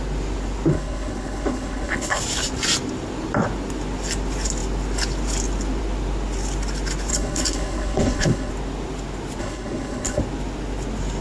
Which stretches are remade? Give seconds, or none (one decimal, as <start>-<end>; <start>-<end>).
0.7-2.2; 7.1-8.5; 9.4-10.2